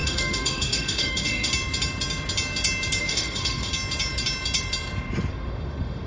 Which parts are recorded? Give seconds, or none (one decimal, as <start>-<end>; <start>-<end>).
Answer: 1.5-3.0; 3.7-5.3